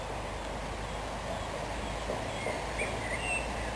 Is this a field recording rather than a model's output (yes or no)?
yes